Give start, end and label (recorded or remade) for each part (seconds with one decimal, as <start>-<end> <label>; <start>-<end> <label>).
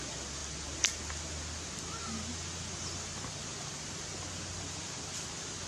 0.0-5.7 recorded